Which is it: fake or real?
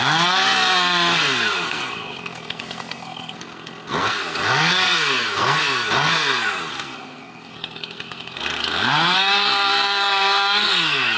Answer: fake